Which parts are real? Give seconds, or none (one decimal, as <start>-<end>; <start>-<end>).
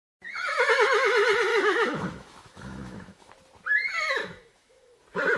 0.0-1.5; 3.3-4.2; 5.0-5.4